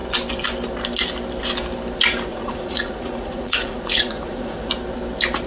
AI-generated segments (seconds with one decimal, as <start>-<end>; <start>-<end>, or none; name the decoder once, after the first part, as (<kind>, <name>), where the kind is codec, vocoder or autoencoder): 2.3-4.7 (vocoder, Vocos)